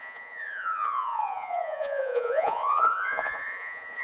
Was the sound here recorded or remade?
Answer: remade